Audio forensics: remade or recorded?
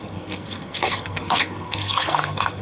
remade